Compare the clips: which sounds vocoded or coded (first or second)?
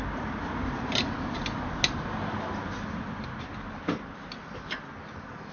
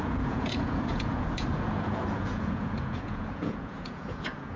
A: second